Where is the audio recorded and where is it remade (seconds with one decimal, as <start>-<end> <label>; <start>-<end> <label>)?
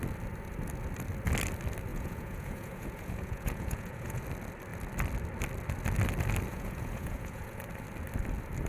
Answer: 0.0-1.9 recorded; 1.9-4.2 remade; 4.2-6.5 recorded; 6.5-7.6 remade; 7.6-8.7 recorded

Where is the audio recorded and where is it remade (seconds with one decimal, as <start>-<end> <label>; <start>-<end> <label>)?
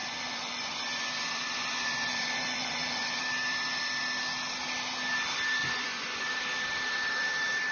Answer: 0.0-3.2 remade; 3.2-5.6 recorded; 5.6-6.3 remade; 6.3-7.7 recorded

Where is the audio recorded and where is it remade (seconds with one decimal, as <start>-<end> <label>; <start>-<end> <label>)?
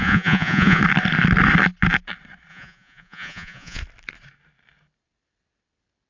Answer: 0.0-0.8 remade; 0.8-2.5 recorded; 2.5-3.8 remade; 3.8-6.1 recorded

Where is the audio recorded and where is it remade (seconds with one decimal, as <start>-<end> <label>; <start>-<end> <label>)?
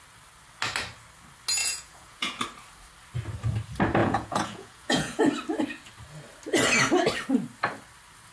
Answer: 0.0-1.6 recorded; 1.6-2.4 remade; 2.4-4.0 recorded; 4.0-5.2 remade; 5.2-8.3 recorded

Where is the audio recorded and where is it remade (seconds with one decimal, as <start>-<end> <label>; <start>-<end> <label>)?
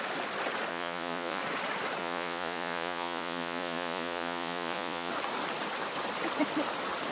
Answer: 0.0-0.7 recorded; 0.7-1.4 remade; 1.4-2.0 recorded; 2.0-5.1 remade; 5.1-7.1 recorded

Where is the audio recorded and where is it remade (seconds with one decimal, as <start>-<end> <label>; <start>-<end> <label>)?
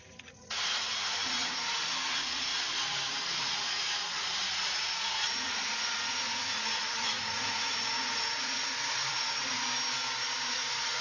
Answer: 0.0-9.6 remade; 9.6-10.5 recorded; 10.5-11.0 remade